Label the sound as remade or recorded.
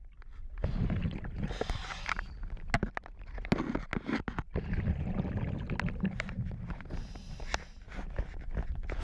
recorded